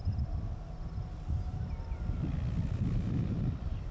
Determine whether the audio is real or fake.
real